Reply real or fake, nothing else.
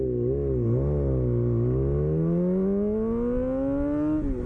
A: real